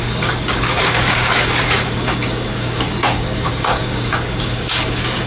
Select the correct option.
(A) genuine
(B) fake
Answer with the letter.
B